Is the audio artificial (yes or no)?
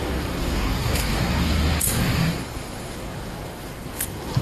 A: yes